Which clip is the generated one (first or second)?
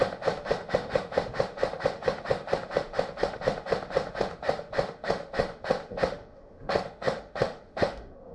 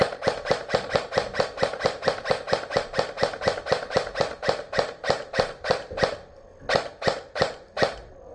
first